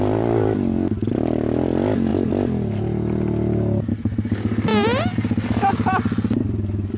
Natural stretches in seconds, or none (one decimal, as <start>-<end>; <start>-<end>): 0.0-7.0